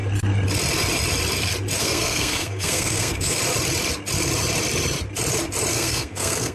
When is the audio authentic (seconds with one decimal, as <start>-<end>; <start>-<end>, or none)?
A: 0.0-1.8; 3.4-5.7

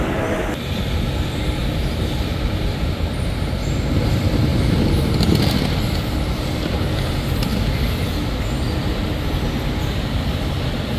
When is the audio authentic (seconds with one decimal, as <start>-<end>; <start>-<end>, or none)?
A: 0.0-1.6; 3.0-11.0

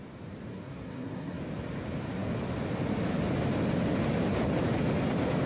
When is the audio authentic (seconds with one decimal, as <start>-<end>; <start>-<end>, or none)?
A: 0.0-0.5; 1.4-5.5

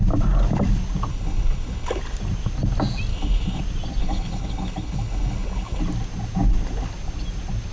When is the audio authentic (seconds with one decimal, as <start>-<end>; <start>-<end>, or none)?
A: 0.0-1.1; 2.0-3.1; 3.6-4.0; 5.8-7.7

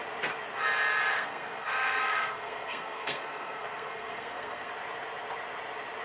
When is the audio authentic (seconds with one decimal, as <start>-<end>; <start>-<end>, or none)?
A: 0.0-1.1; 4.7-6.0